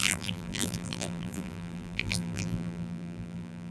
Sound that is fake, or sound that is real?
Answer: fake